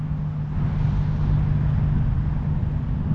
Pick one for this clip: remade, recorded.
recorded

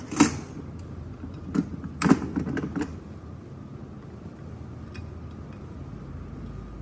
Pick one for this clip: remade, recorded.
recorded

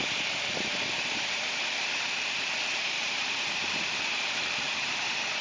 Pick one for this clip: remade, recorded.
remade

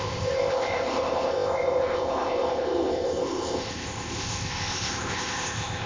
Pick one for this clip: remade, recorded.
remade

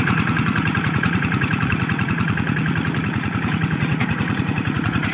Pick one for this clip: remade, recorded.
remade